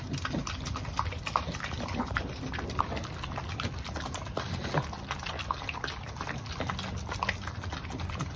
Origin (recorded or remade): recorded